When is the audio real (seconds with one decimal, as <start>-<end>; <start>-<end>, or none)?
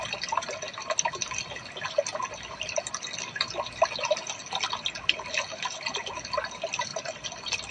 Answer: 0.0-7.7